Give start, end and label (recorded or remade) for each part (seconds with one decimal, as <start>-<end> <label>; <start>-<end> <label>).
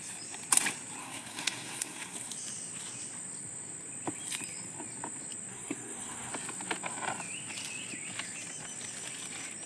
0.0-1.0 recorded; 1.0-2.3 remade; 2.3-5.5 recorded; 5.5-6.3 remade; 6.3-9.7 recorded